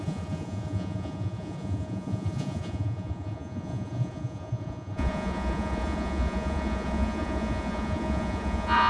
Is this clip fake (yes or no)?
yes